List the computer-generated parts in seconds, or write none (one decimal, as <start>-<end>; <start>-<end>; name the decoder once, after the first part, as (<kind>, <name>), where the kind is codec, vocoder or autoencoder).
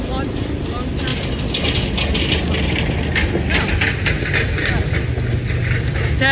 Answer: none